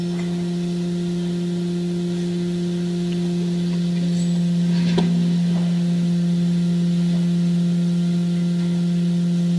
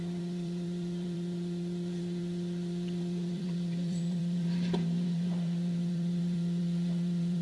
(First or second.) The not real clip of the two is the second